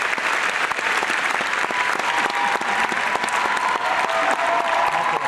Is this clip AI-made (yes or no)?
no